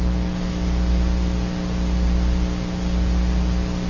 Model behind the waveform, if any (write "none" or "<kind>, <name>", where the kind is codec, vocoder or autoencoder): none